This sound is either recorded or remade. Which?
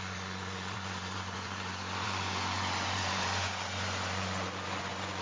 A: remade